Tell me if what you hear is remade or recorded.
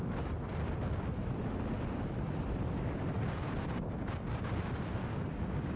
recorded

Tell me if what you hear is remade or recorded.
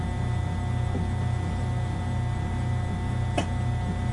recorded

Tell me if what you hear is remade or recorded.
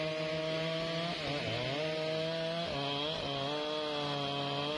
recorded